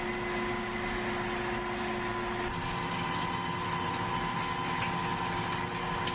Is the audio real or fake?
real